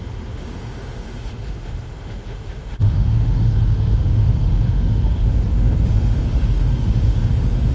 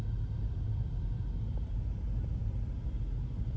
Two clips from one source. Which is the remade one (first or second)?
first